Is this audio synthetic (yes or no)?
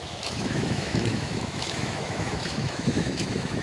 yes